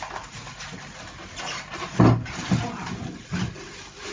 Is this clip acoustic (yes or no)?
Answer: yes